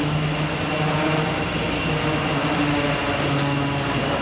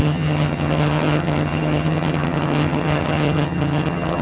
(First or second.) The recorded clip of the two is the first